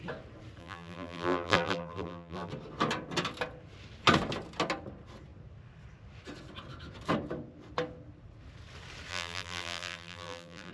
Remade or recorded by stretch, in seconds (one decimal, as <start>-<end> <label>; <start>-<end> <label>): 0.0-0.6 recorded; 0.6-2.5 remade; 2.5-9.1 recorded; 9.1-10.7 remade